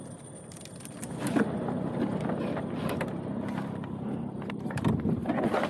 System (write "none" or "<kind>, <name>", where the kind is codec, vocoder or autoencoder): none